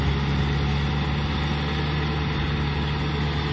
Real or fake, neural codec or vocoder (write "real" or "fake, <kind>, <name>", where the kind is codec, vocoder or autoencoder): real